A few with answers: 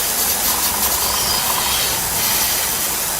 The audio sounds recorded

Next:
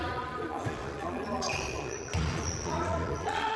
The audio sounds remade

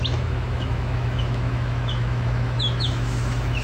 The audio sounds remade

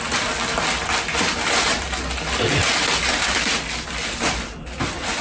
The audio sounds recorded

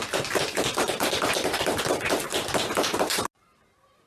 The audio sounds recorded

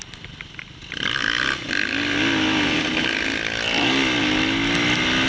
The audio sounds recorded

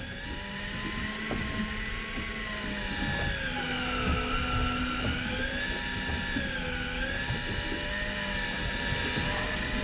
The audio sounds recorded